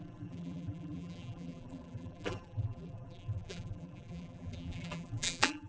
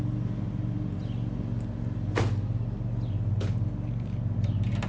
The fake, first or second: first